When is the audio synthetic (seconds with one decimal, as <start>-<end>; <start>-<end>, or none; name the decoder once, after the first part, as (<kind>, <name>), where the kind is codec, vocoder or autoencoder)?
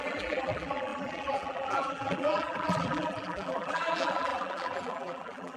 0.0-5.6 (vocoder, BigVGAN v2)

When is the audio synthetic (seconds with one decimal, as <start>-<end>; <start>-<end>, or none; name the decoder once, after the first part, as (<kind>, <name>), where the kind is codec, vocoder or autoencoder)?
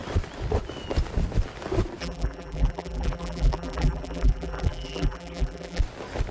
2.0-5.8 (vocoder, BigVGAN v2)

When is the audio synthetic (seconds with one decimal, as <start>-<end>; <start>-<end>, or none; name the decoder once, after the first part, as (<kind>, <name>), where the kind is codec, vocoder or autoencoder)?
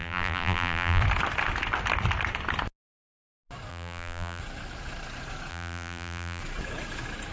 0.0-1.0 (vocoder, BigVGAN v2); 3.7-4.4; 5.5-6.4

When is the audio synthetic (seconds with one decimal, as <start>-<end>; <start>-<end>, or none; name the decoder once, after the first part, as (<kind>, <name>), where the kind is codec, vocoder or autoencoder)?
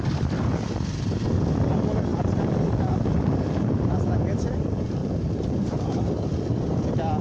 2.1-3.7 (vocoder, BigVGAN v2); 5.0-5.9